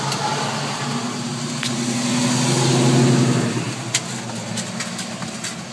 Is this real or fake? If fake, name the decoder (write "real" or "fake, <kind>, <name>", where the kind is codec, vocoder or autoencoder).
real